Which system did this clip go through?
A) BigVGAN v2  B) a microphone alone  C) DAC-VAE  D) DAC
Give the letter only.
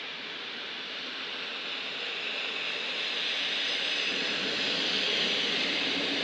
B